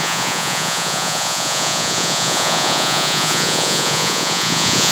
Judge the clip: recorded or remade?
remade